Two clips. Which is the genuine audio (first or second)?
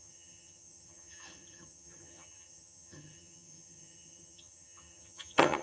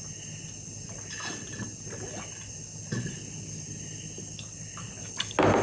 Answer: second